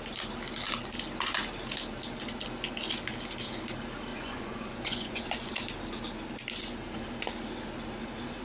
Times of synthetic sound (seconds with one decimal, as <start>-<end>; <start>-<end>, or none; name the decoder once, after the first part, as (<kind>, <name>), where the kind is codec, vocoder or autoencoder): 4.1-5.5 (vocoder, Vocos)